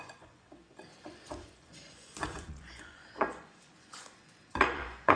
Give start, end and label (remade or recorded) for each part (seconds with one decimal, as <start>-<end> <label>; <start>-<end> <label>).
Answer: 0.0-5.2 remade